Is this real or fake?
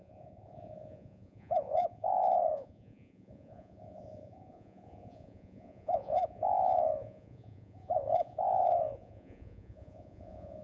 fake